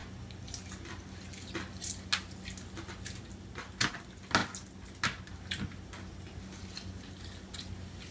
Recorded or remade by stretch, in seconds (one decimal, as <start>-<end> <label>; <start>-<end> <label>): 0.0-8.1 recorded